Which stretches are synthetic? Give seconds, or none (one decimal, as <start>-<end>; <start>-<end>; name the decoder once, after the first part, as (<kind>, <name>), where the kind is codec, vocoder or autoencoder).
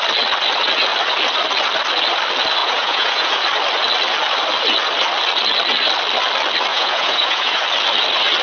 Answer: 2.6-3.3 (vocoder, Vocos); 6.7-7.6